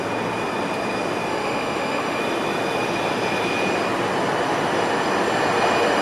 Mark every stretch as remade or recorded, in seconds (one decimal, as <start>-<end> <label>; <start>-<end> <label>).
0.0-1.3 recorded; 1.3-2.2 remade; 2.2-6.0 recorded